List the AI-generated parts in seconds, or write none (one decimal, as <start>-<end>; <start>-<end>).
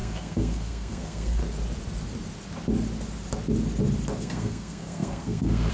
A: 0.0-1.4; 4.2-5.7